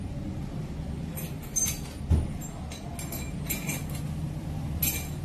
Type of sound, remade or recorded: recorded